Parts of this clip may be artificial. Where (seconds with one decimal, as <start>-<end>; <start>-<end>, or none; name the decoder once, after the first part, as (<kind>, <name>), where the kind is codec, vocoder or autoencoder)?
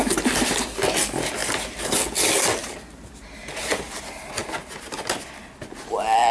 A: none